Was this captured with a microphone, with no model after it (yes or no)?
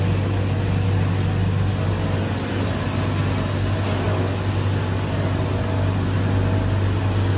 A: yes